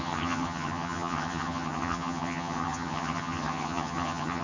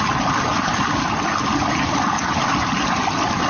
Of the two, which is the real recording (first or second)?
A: second